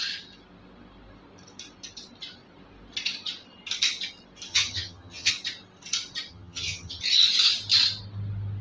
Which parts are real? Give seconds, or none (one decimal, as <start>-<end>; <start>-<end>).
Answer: 0.0-4.5; 5.3-6.3; 7.0-8.6